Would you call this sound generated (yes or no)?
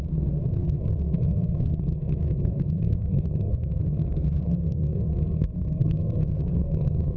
yes